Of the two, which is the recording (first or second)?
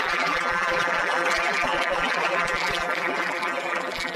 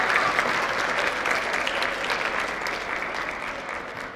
second